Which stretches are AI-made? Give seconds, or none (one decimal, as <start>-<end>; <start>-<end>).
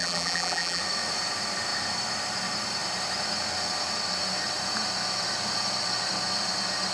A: 0.0-0.8